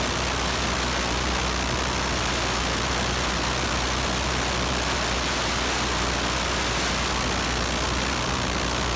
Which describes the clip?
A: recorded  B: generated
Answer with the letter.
A